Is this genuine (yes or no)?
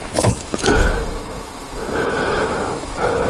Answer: no